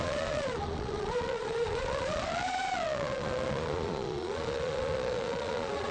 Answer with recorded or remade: remade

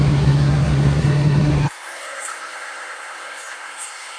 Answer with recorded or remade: remade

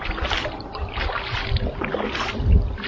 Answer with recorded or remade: recorded